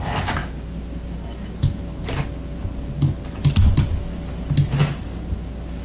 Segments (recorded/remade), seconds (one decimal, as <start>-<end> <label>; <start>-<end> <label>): 0.0-5.8 recorded